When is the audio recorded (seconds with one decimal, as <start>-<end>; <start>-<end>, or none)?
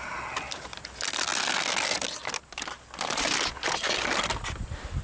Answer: 0.0-5.0